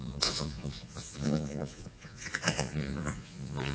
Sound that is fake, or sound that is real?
fake